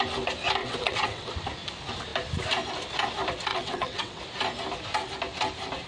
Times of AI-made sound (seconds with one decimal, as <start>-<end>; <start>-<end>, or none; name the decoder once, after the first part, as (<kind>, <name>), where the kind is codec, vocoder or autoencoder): 0.6-1.3 (vocoder, WaveNeXt); 3.5-4.2